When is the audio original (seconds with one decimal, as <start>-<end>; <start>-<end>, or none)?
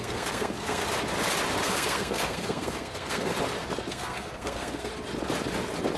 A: 0.8-1.6; 3.3-3.9; 4.9-6.0